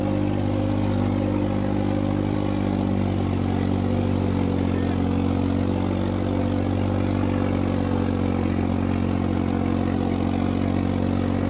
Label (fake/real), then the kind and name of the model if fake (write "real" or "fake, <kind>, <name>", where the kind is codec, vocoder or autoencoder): real